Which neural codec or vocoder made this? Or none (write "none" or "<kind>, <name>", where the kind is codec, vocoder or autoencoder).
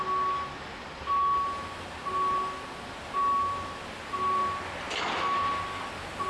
none